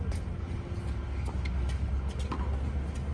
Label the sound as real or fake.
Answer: real